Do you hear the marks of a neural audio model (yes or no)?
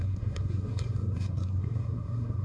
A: yes